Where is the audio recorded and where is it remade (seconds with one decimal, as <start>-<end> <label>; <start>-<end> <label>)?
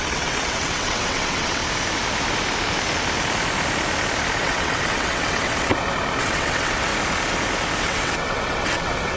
0.0-1.6 remade; 1.6-4.4 recorded; 4.4-5.7 remade; 5.7-6.2 recorded; 6.2-6.9 remade; 6.9-7.8 recorded; 7.8-9.2 remade